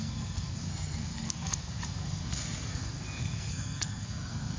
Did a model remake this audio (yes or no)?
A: yes